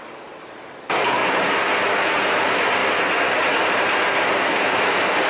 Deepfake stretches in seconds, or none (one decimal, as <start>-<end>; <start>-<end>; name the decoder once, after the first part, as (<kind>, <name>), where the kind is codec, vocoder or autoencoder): 0.0-1.2 (vocoder, BigVGAN v2); 2.3-2.8; 4.4-5.3